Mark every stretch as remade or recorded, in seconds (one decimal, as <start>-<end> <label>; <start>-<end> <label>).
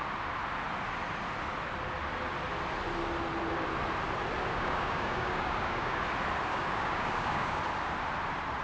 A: 0.0-4.5 recorded; 4.5-6.0 remade; 6.0-6.5 recorded; 6.5-7.6 remade; 7.6-8.6 recorded